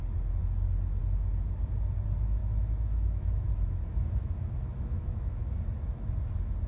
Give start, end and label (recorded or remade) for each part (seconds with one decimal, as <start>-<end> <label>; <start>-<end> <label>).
0.0-2.4 recorded; 2.4-5.9 remade; 5.9-6.7 recorded